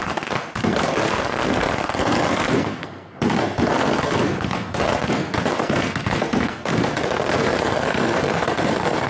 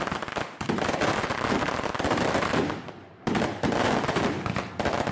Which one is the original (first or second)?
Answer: second